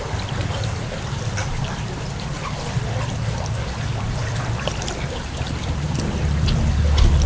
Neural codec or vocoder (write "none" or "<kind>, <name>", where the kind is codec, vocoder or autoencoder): vocoder, BigVGAN v2